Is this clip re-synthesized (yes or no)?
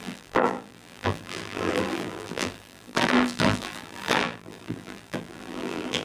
yes